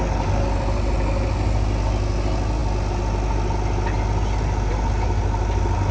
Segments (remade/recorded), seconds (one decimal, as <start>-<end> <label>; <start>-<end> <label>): 0.0-5.9 recorded